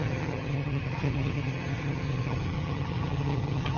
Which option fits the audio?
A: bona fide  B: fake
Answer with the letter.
B